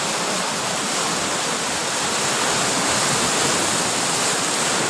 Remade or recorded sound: recorded